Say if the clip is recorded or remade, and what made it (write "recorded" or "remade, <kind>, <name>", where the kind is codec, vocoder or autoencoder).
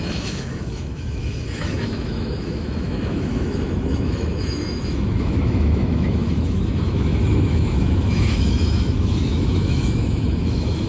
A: remade, autoencoder, DAC-VAE